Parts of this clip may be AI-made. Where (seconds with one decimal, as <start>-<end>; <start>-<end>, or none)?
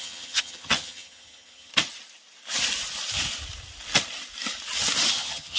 0.0-1.7; 5.1-5.6